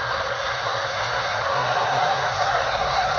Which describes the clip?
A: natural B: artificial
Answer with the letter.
B